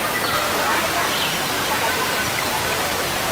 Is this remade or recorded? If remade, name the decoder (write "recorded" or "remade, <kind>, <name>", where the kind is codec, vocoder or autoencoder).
recorded